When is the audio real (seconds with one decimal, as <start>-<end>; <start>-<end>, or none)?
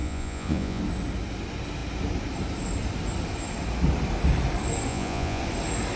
0.8-4.9; 5.4-6.0